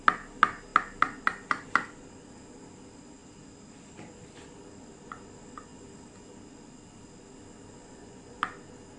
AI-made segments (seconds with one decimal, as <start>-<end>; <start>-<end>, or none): 7.8-8.4